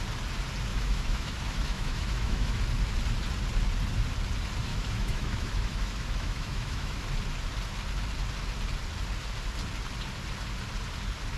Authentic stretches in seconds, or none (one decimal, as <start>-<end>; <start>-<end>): 0.0-0.7; 2.6-4.7; 7.0-11.4